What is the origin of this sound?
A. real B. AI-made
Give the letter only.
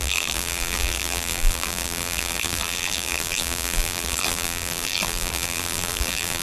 B